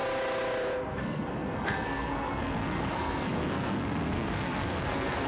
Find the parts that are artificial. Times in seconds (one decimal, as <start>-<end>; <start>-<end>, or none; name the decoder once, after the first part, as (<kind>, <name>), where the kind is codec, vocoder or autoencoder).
0.9-5.3 (codec, SNAC)